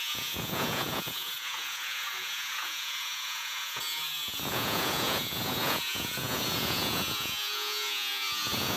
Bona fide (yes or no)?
no